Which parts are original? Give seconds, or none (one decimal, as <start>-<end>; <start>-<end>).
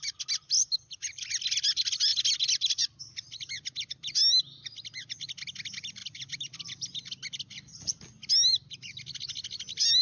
0.0-10.0